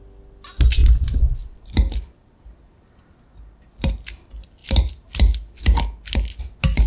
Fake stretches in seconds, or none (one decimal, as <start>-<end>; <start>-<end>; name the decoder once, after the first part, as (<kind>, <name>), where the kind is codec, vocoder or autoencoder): 0.8-1.6 (vocoder, BigVGAN v2)

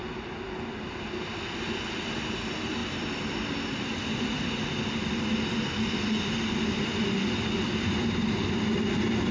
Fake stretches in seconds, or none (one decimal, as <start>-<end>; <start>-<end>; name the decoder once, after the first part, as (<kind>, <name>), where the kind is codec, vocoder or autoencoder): none

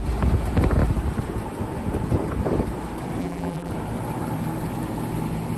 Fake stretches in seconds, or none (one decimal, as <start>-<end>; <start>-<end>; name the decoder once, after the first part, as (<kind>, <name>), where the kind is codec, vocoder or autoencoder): 3.2-3.7 (vocoder, BigVGAN v2)

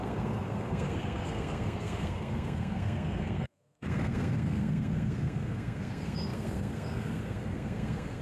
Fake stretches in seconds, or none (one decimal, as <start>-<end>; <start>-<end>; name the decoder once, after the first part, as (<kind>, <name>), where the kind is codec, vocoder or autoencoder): 0.0-8.2 (codec, SNAC)

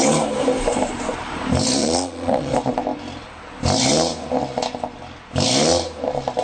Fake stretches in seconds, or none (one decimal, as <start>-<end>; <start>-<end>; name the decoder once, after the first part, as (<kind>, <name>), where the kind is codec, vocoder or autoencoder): 1.8-2.5 (vocoder, Vocos)

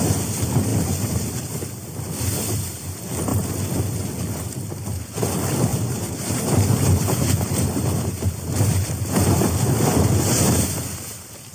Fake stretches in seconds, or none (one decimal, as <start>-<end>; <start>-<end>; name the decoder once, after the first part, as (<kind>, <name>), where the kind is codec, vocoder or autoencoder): 0.7-1.6 (vocoder, BigVGAN v2); 5.7-8.9

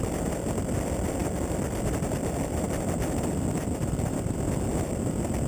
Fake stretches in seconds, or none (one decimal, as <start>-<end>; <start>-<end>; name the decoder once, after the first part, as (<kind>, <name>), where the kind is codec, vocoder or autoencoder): 1.2-4.5 (vocoder, BigVGAN v2)

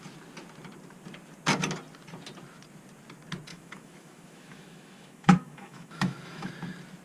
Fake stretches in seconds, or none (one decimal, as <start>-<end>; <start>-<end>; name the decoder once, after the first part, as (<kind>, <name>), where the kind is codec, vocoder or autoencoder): 3.5-6.5 (autoencoder, DAC-VAE)